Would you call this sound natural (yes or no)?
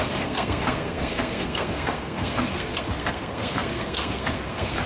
no